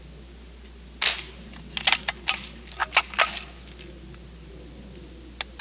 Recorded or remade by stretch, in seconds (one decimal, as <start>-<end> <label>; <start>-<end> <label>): 0.0-5.6 recorded